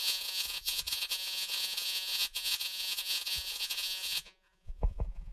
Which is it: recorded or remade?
remade